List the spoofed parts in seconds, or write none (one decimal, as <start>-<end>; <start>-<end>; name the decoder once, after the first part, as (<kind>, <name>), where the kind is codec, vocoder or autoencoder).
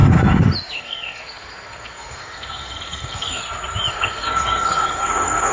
0.7-3.4 (codec, SNAC); 3.9-5.5